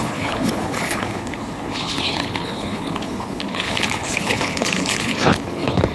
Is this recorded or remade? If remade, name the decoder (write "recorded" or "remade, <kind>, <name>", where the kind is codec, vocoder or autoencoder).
remade, codec, HILCodec